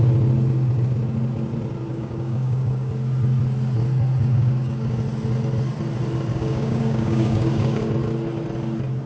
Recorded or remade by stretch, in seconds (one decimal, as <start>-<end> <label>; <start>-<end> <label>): 0.0-1.9 recorded; 1.9-2.9 remade; 2.9-4.2 recorded; 4.2-5.0 remade; 5.0-6.3 recorded; 6.3-7.9 remade; 7.9-9.1 recorded